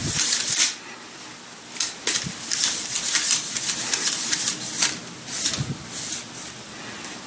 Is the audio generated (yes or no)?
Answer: no